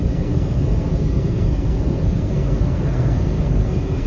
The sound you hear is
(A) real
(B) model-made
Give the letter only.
B